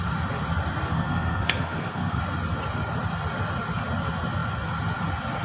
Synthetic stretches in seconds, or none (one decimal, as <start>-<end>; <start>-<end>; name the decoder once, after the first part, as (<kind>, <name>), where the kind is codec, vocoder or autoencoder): 0.9-2.2 (codec, SNAC)